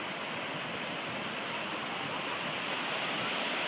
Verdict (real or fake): real